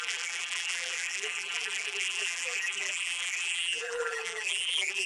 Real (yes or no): no